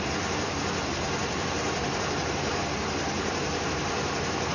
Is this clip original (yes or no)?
no